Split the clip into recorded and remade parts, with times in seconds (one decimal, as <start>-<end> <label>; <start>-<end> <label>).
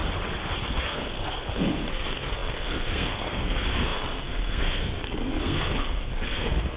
0.0-0.7 recorded; 0.7-6.8 remade